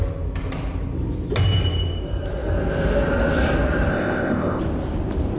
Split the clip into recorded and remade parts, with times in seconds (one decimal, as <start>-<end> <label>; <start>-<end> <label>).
0.0-3.9 recorded; 3.9-4.6 remade; 4.6-5.4 recorded